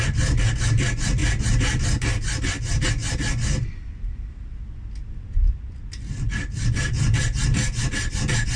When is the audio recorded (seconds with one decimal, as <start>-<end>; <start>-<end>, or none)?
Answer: 0.0-8.6